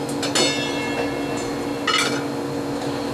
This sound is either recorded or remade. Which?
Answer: recorded